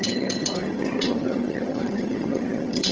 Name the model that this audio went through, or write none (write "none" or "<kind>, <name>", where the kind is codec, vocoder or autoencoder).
vocoder, HiFi-GAN